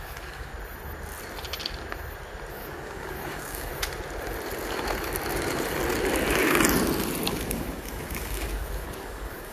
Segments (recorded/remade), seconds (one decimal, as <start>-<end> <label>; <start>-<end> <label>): 0.0-0.5 remade; 0.5-2.5 recorded; 2.5-3.7 remade; 3.7-7.3 recorded; 7.3-9.5 remade

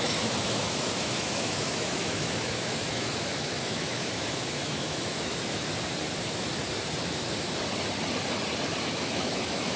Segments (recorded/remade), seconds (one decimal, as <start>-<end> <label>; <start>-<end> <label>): 0.0-5.7 remade; 5.7-8.8 recorded; 8.8-9.8 remade